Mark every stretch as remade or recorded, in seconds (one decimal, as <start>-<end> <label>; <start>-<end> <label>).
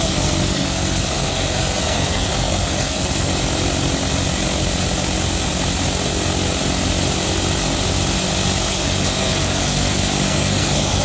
0.0-3.3 remade; 3.3-8.6 recorded; 8.6-11.0 remade